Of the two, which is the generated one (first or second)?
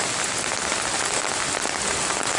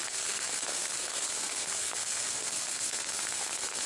second